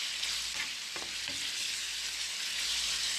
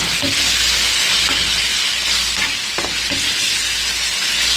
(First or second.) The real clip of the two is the second